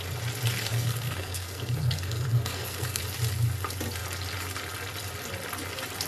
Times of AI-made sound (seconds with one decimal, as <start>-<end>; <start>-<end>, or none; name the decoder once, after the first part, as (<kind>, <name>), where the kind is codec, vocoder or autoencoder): 0.6-3.0 (codec, SNAC)